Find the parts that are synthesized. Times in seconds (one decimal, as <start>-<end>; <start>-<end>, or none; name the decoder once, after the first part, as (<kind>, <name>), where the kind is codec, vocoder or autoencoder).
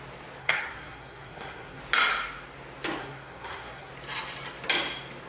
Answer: 0.4-1.8 (codec, SNAC); 3.0-3.9